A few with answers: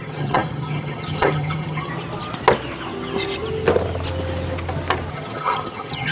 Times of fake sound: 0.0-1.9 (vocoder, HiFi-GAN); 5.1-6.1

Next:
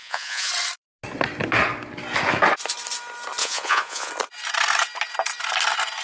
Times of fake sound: 0.0-0.5 (vocoder, Vocos); 3.4-4.1

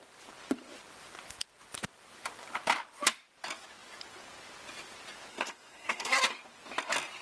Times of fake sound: 5.3-6.2 (codec, SNAC)

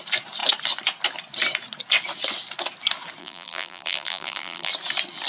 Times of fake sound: 3.2-4.7 (vocoder, BigVGAN v2)